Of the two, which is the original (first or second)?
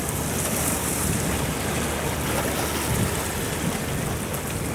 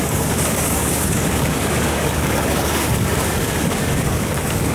first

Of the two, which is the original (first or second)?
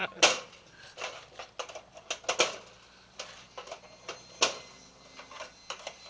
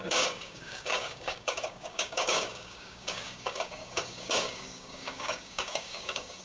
first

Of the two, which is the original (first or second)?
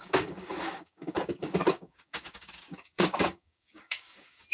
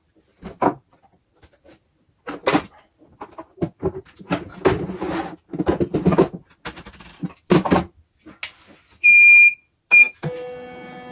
second